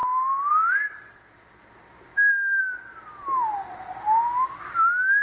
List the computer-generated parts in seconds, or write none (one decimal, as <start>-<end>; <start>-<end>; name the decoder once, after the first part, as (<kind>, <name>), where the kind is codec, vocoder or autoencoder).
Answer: 2.1-2.6 (codec, DAC)